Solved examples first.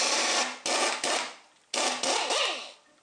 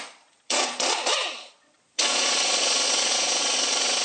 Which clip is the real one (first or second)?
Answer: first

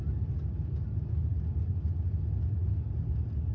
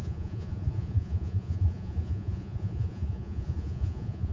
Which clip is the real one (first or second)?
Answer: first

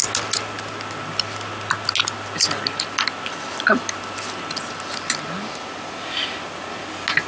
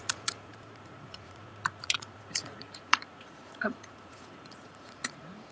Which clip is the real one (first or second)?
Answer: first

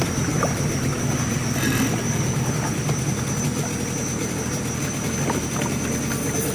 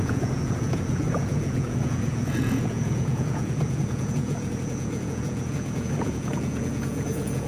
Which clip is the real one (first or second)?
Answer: first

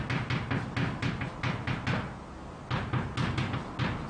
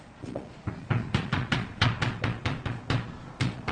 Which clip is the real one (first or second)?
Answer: first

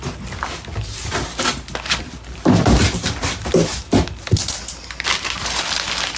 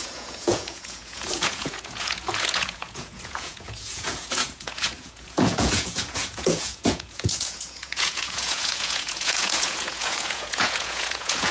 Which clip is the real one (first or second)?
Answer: first